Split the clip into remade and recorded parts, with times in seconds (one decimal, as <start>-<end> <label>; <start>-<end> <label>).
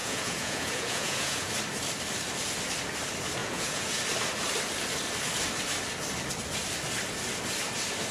0.0-1.5 remade; 1.5-3.4 recorded; 3.4-4.0 remade; 4.0-8.1 recorded